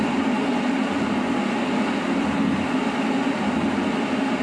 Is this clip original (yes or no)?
yes